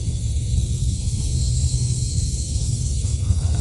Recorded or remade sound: remade